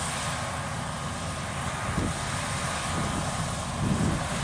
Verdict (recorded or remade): recorded